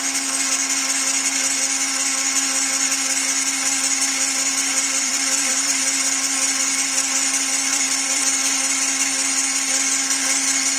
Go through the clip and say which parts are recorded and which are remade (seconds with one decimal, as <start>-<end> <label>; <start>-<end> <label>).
0.0-4.7 recorded; 4.7-5.8 remade; 5.8-7.7 recorded; 7.7-8.2 remade; 8.2-10.8 recorded